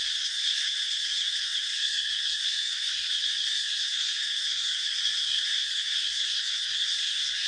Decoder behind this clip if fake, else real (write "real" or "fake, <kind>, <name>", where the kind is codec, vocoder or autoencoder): fake, codec, SNAC